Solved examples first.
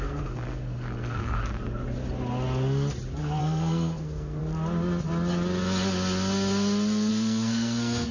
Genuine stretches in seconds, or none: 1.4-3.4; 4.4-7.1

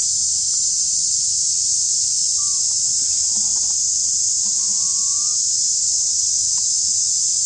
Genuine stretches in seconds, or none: 0.0-5.1; 6.4-7.5